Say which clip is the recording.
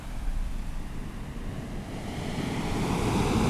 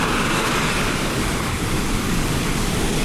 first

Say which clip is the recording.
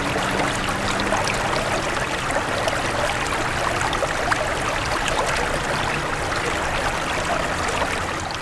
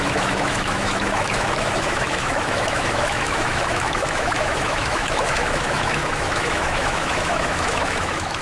first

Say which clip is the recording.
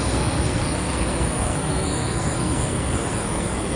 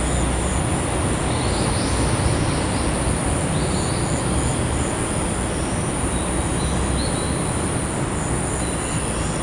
second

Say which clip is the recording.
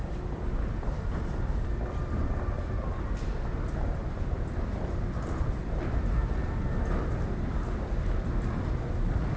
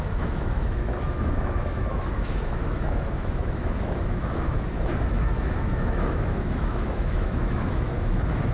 first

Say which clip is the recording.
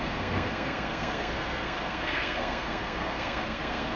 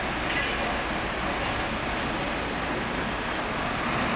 second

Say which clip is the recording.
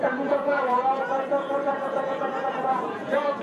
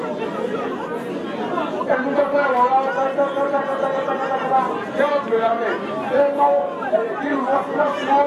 second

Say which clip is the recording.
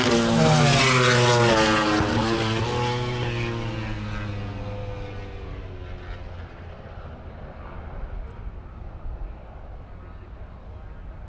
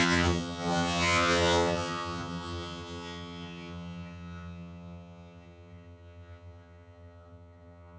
first